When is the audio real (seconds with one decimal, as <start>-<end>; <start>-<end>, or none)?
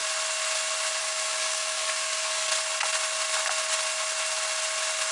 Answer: 0.0-1.0; 2.5-5.1